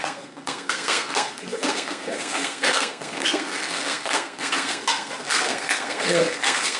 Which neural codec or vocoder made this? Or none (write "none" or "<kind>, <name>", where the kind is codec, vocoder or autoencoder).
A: codec, SNAC